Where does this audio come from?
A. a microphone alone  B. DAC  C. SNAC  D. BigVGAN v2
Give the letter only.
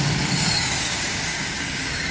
B